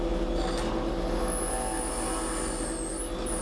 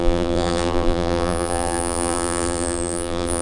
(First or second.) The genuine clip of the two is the first